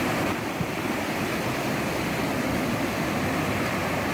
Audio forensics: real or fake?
fake